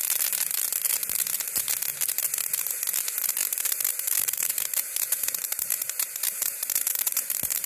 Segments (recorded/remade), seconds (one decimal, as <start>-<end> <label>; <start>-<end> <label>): 0.0-3.4 recorded; 3.4-7.2 remade; 7.2-7.7 recorded